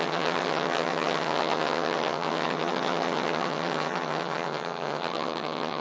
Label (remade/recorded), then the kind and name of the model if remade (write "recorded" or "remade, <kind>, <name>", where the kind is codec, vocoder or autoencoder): remade, vocoder, HiFi-GAN